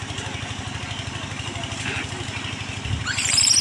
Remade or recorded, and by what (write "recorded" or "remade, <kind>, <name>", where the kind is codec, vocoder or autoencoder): recorded